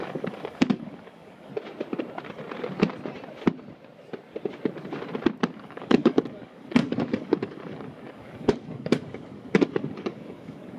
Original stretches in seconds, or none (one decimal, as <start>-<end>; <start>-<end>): 1.5-5.5